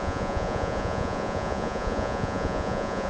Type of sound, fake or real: fake